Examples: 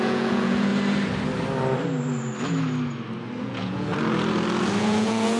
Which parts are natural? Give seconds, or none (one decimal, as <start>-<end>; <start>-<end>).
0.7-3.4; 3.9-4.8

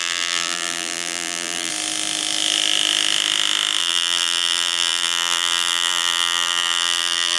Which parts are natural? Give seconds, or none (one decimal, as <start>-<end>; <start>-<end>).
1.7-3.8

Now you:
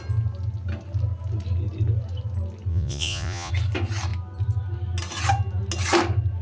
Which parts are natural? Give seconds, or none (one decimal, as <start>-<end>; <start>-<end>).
0.0-2.7; 3.5-6.4

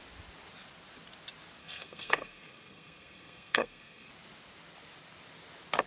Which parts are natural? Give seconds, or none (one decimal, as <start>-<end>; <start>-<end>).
0.0-1.6; 4.1-5.9

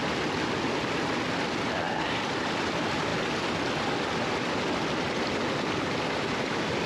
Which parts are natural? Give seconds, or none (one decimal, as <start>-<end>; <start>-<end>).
0.0-6.9

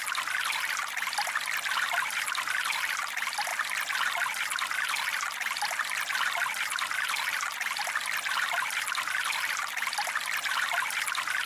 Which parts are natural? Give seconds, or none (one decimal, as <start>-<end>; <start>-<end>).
3.5-7.8

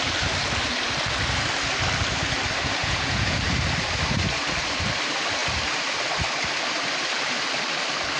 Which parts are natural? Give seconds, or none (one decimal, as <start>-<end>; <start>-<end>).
0.0-2.8; 3.4-8.2

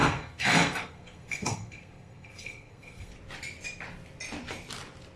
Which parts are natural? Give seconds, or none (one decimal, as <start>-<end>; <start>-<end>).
3.1-5.2